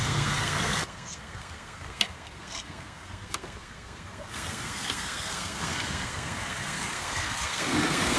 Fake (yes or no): yes